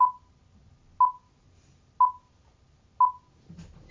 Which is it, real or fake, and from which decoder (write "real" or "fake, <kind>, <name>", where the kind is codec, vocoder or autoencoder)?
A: real